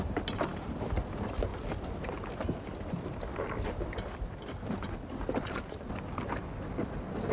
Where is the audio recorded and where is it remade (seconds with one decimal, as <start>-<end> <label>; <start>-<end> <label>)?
0.0-7.3 recorded